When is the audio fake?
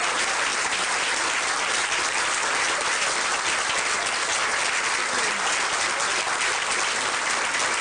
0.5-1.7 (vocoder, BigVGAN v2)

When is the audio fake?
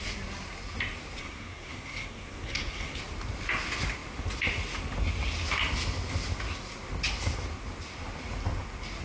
1.2-3.0 (codec, SNAC)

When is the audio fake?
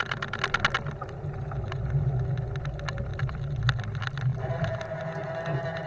3.1-3.6 (vocoder, BigVGAN v2); 4.3-4.9